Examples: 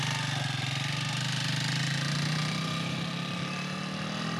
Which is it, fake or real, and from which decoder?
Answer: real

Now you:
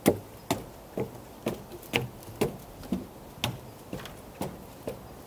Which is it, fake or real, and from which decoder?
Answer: real